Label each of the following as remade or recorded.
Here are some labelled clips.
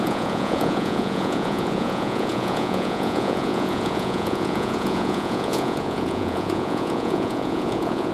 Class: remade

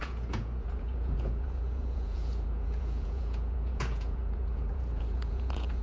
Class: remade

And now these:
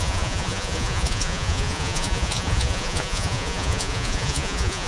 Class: remade